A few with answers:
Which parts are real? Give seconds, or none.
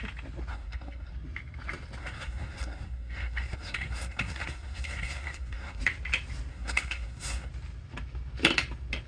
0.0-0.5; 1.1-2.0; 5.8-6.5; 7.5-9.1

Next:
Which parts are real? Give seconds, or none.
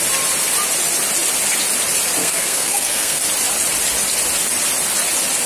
0.0-2.2; 3.2-5.5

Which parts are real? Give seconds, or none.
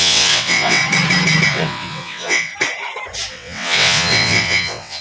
0.8-1.5; 2.5-3.3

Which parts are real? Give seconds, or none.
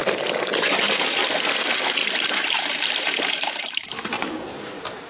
0.5-2.0